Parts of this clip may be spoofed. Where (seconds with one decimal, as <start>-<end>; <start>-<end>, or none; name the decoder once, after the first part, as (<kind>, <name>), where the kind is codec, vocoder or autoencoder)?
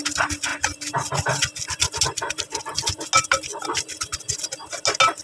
none